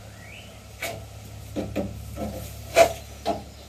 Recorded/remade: recorded